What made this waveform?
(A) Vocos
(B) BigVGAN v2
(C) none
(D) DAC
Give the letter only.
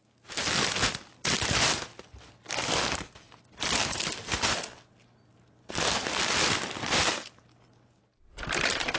C